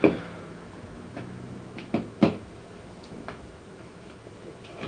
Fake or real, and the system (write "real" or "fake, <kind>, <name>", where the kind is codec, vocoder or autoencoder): fake, autoencoder, DAC-VAE